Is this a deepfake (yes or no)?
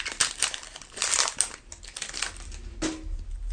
no